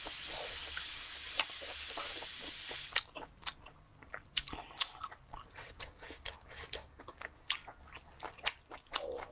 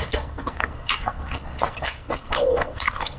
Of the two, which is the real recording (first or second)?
first